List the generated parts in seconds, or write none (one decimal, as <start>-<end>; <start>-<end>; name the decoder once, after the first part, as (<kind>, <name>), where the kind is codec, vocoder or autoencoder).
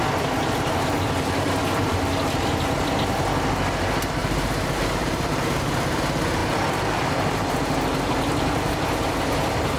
4.2-6.0 (vocoder, BigVGAN v2); 6.4-7.5